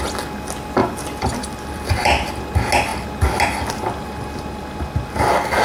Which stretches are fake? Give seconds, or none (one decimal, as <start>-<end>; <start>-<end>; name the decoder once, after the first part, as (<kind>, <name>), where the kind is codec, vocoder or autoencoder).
0.8-2.3 (vocoder, BigVGAN v2)